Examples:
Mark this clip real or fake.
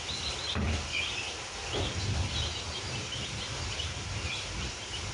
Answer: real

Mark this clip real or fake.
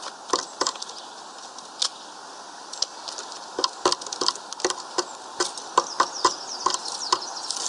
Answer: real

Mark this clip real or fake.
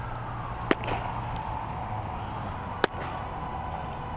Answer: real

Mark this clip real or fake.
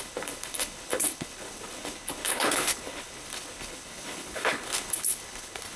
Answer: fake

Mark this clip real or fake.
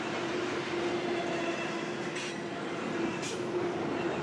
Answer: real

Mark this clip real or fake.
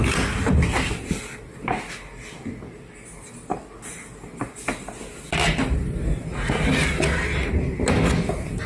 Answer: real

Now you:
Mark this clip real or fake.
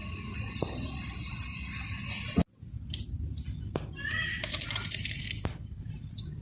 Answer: real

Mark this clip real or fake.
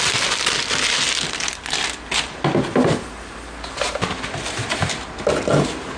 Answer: real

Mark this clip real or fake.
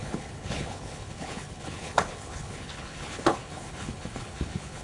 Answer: fake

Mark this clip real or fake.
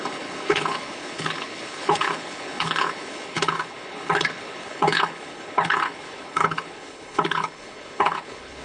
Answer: fake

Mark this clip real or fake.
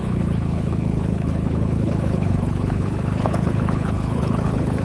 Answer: fake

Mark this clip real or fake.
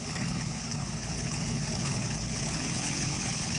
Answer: fake